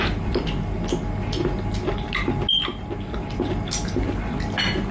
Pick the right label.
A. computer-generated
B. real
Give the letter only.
B